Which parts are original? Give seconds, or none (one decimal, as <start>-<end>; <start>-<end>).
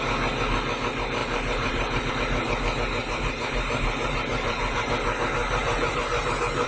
0.0-1.2; 2.1-3.0; 4.9-5.4